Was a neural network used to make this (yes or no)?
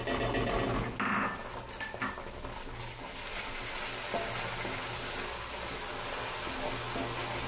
no